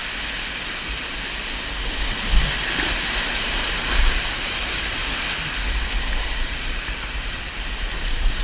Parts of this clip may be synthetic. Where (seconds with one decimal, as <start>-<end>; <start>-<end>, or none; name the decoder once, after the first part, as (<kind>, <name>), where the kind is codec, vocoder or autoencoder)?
3.3-5.0 (vocoder, BigVGAN v2); 6.2-8.4

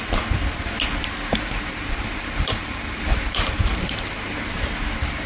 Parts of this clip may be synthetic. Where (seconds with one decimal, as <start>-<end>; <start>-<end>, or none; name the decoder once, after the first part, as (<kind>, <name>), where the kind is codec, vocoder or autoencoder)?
1.3-4.5 (vocoder, BigVGAN v2)